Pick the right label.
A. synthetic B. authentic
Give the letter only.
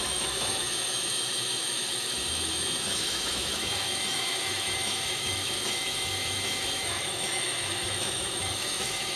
A